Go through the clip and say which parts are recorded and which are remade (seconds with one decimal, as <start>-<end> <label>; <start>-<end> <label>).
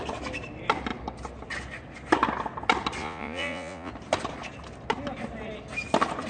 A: 0.0-3.0 recorded; 3.0-3.9 remade; 3.9-6.3 recorded